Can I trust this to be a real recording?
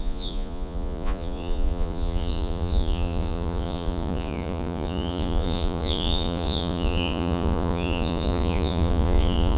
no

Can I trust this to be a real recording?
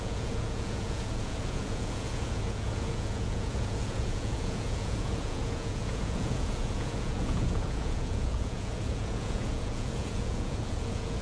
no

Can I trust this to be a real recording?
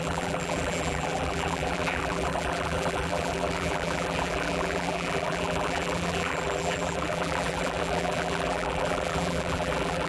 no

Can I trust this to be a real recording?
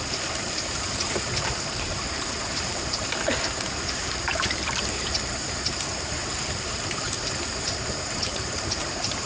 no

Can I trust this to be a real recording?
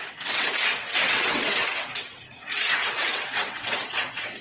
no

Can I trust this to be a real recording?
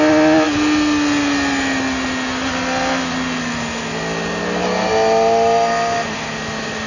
yes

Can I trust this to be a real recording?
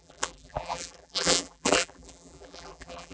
no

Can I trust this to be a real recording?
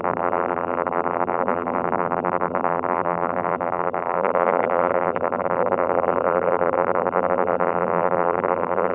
no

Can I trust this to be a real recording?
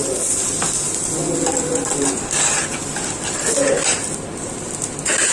yes